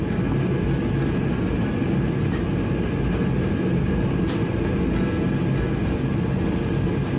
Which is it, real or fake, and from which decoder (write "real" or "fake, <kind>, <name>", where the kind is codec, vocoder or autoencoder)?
real